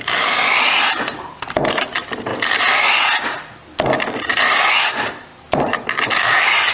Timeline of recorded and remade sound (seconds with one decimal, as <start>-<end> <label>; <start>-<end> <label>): 0.0-6.7 recorded